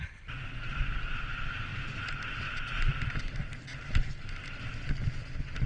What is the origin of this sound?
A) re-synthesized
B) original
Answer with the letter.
B